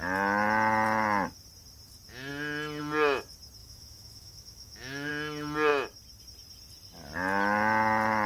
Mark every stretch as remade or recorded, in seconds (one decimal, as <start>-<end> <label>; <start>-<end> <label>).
0.0-3.6 recorded; 3.6-5.1 remade; 5.1-8.3 recorded